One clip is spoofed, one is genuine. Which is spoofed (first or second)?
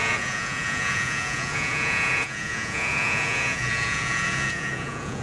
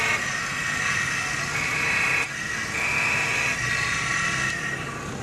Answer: first